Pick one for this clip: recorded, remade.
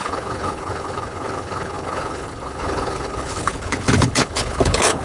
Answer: remade